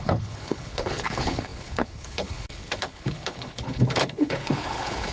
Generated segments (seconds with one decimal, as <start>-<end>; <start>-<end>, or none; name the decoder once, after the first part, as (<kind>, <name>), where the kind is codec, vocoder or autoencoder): 0.0-5.1 (codec, HILCodec)